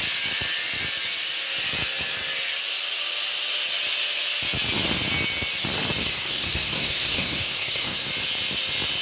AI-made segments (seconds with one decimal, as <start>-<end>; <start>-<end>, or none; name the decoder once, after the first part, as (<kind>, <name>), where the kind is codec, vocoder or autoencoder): 6.0-8.1 (codec, SNAC)

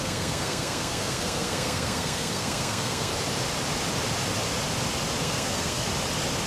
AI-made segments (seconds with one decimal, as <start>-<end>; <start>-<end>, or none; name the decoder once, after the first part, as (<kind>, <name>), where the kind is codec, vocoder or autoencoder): 0.0-3.1 (codec, SNAC); 5.2-5.9